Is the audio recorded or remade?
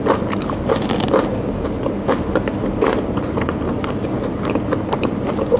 recorded